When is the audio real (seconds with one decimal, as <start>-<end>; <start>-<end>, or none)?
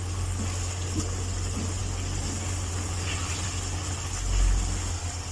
0.0-5.3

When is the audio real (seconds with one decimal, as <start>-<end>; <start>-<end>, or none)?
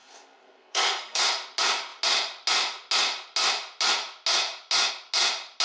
1.2-5.6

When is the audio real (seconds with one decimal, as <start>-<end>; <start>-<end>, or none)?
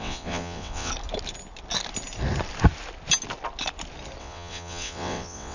0.9-4.2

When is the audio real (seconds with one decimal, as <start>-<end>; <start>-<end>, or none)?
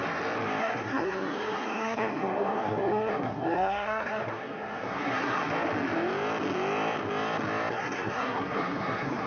0.0-0.6; 5.5-7.7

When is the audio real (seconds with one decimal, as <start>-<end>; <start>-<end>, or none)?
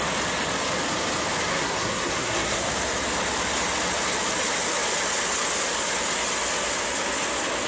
0.0-1.5; 2.7-7.7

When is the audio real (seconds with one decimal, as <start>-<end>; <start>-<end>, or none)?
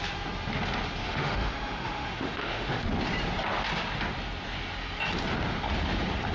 0.0-1.0; 2.9-6.3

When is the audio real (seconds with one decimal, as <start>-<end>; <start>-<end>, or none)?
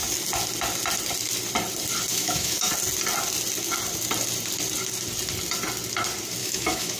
0.0-2.1; 2.7-6.4